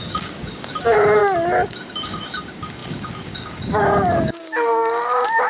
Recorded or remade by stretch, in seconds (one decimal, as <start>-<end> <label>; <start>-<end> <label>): 0.0-1.2 remade; 1.2-2.0 recorded; 2.0-5.5 remade